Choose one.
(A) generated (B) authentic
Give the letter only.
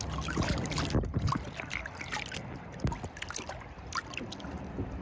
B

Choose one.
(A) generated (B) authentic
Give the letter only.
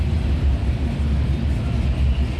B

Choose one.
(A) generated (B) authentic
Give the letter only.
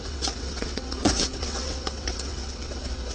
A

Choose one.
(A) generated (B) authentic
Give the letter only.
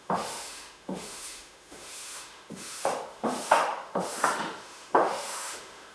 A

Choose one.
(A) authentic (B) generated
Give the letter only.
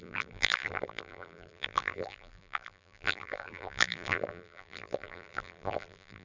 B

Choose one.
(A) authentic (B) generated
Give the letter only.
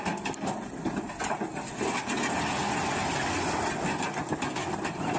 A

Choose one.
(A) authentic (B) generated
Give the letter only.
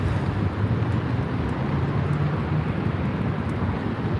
A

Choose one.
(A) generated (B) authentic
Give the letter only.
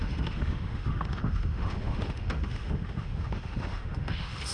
A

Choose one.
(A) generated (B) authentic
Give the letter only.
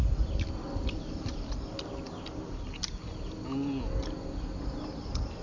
B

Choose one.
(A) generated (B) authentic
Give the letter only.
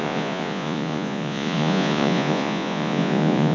A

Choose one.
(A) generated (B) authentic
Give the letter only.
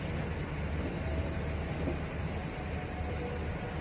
B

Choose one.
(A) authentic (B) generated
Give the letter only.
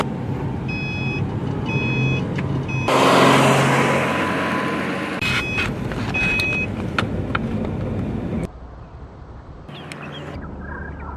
A